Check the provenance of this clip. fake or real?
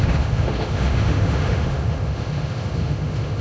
fake